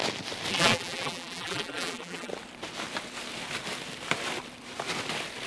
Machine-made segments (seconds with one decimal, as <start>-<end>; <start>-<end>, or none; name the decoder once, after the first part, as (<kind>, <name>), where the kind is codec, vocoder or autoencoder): 0.5-2.3 (vocoder, BigVGAN v2)